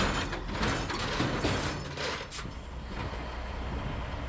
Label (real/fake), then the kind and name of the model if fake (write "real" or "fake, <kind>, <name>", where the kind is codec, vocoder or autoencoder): real